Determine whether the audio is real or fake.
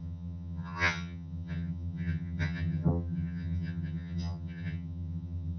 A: fake